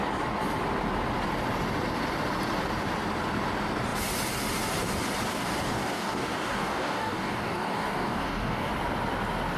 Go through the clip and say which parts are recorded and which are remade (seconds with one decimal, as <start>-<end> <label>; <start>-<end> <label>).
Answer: 0.0-5.3 recorded; 5.3-8.7 remade; 8.7-9.6 recorded